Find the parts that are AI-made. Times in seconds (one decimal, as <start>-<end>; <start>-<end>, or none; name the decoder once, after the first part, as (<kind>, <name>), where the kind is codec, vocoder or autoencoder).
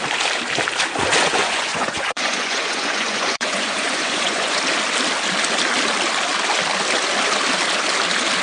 1.2-4.6 (vocoder, Vocos)